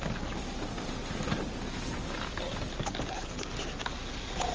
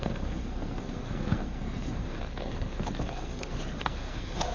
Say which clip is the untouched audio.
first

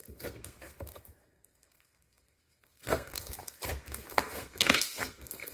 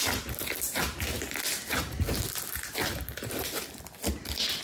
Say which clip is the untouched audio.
second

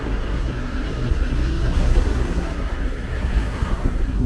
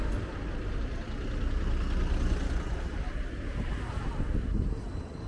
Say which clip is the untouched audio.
second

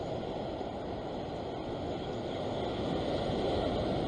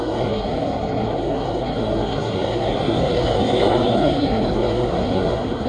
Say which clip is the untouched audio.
first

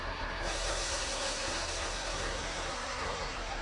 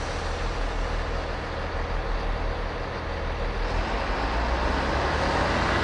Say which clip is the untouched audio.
second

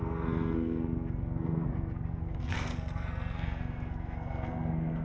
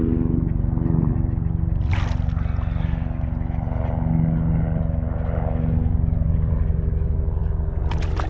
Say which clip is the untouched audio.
second